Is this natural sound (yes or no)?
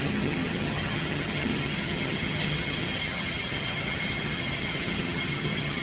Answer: no